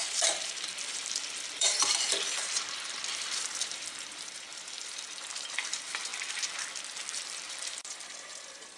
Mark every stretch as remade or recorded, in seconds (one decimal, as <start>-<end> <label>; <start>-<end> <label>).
0.0-6.1 remade; 6.1-7.1 recorded; 7.1-8.8 remade